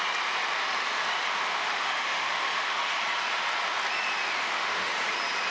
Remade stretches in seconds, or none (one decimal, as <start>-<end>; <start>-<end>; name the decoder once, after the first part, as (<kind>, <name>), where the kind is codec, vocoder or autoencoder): 1.5-3.0 (autoencoder, DAC-VAE); 4.4-4.9